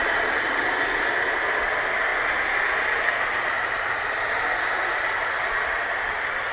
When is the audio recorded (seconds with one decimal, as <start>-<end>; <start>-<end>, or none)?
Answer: 0.0-6.5